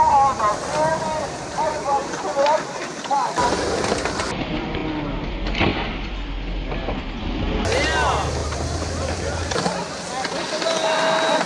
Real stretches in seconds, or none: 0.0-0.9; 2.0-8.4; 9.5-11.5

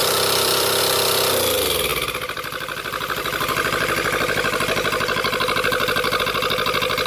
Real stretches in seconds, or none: 0.8-1.9; 6.2-7.1